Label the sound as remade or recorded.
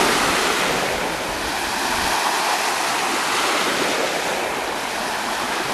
recorded